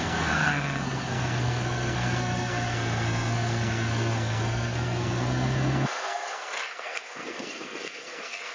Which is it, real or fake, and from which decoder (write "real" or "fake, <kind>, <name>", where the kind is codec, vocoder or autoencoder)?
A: fake, codec, SNAC